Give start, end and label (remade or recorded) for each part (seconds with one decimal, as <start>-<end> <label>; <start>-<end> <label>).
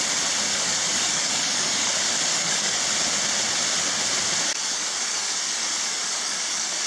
0.0-0.5 recorded; 0.5-1.9 remade; 1.9-2.3 recorded; 2.3-2.8 remade; 2.8-4.5 recorded; 4.5-6.9 remade